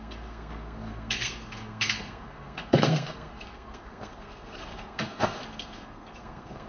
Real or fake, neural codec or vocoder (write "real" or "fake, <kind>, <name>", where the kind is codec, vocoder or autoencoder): fake, codec, SNAC